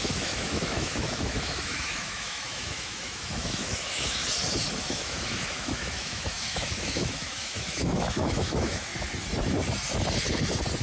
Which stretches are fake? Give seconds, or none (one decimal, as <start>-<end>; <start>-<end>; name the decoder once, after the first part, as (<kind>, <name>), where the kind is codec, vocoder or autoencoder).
0.0-4.2 (autoencoder, DAC-VAE); 4.8-8.9